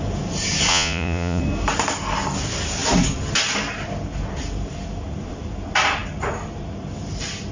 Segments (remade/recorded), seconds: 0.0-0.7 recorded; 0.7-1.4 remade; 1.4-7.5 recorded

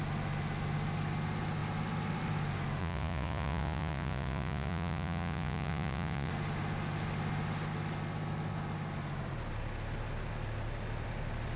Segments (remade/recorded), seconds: 0.0-2.8 recorded; 2.8-6.3 remade; 6.3-11.6 recorded

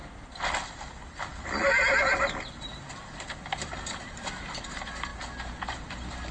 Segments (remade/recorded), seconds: 0.0-6.3 recorded

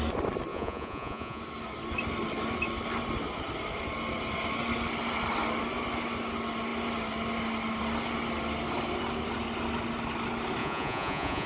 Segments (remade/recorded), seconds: 0.0-0.5 recorded; 0.5-1.4 remade; 1.4-10.6 recorded; 10.6-11.5 remade

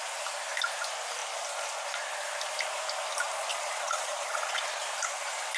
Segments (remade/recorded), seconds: 0.0-3.5 recorded; 3.5-4.8 remade; 4.8-5.6 recorded

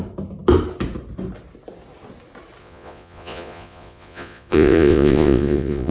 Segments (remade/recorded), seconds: 0.0-2.6 recorded; 2.6-5.9 remade

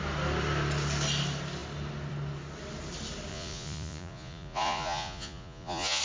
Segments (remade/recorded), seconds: 0.0-3.3 recorded; 3.3-6.0 remade

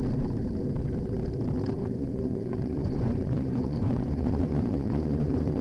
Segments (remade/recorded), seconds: 0.0-1.8 recorded; 1.8-5.6 remade